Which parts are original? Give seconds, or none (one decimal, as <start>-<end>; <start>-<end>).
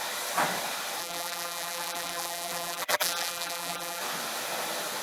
0.0-1.0; 4.0-5.0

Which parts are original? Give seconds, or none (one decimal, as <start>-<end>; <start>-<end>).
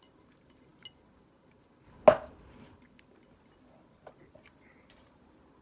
0.0-5.6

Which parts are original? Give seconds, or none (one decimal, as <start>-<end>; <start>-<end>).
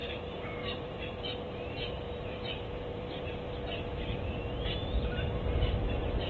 3.5-3.9; 4.9-6.3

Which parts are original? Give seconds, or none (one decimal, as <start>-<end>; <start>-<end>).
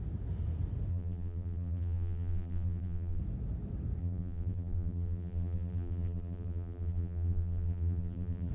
0.0-0.9; 3.2-4.0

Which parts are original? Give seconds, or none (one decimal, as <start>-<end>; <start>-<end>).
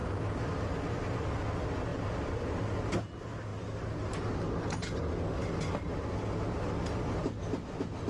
1.4-1.9; 2.8-8.1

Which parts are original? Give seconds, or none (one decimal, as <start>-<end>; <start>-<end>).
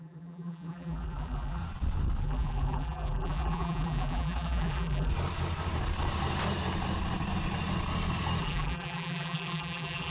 1.6-2.2; 5.1-8.4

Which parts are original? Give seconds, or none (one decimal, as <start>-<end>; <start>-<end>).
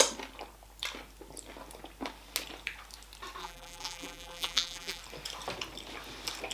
0.0-3.4; 5.0-6.5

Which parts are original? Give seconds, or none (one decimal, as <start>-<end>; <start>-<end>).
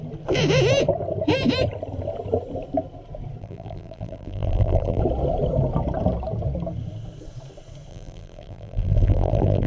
0.0-3.4; 5.0-7.9